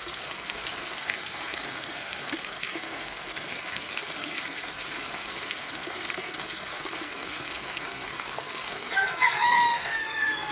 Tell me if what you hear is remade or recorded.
remade